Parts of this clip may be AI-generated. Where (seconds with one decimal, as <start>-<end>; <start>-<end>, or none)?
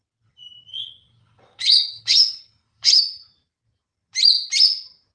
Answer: 0.7-3.0